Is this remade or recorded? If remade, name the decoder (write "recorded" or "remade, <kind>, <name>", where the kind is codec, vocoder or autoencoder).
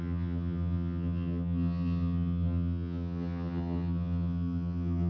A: remade, vocoder, HiFi-GAN